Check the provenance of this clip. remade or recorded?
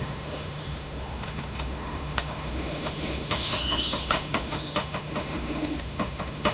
remade